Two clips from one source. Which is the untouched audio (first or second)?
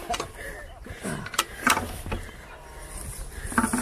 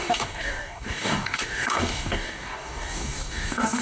first